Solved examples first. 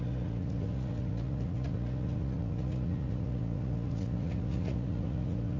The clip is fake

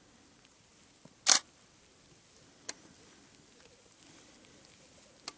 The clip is real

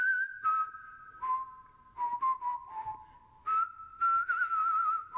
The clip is real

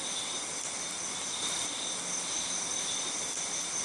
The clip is real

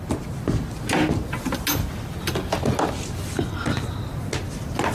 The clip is real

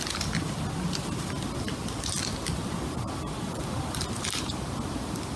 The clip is real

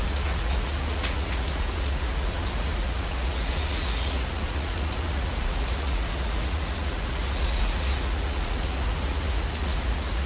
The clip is fake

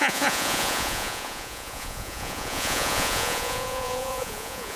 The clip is fake